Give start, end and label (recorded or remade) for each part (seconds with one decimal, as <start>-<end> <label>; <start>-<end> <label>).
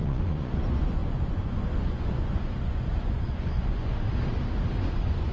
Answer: 0.0-4.1 remade; 4.1-4.8 recorded; 4.8-5.3 remade